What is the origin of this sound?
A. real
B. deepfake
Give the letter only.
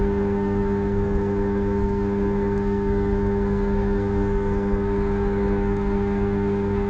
B